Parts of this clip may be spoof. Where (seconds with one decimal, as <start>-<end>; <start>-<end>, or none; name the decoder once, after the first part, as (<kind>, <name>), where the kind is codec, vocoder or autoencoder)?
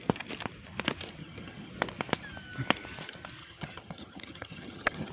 1.2-1.7 (vocoder, HiFi-GAN); 3.4-5.1